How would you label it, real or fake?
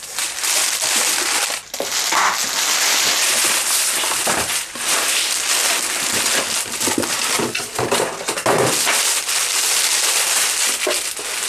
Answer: real